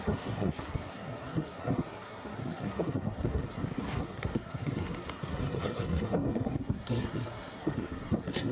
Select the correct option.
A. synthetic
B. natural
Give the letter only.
A